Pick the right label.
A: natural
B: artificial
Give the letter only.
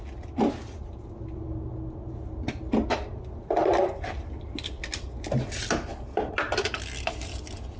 A